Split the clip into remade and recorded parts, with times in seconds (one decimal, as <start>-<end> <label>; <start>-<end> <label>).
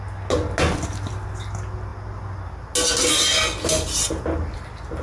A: 0.0-5.0 recorded